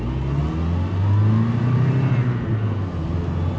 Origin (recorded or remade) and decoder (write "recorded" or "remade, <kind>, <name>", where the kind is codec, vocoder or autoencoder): recorded